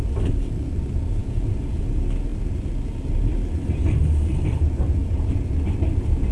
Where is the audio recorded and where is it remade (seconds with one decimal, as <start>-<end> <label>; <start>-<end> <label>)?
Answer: 0.0-1.2 recorded; 1.2-1.8 remade; 1.8-5.0 recorded; 5.0-5.5 remade; 5.5-6.3 recorded